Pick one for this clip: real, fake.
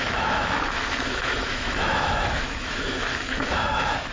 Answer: fake